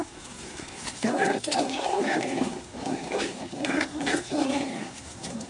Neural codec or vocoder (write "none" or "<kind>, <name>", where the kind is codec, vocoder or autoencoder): codec, SNAC